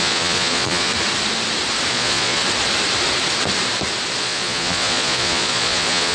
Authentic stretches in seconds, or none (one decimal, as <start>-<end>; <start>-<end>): 0.9-1.9; 2.4-4.2